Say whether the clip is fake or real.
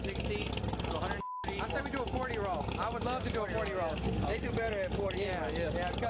real